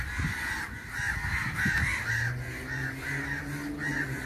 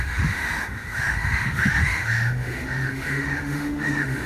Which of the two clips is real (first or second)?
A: first